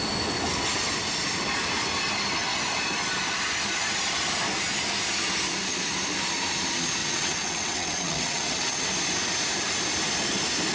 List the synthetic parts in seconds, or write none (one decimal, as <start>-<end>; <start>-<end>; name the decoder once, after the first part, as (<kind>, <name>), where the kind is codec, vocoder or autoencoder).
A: 7.0-8.9 (vocoder, WaveNeXt)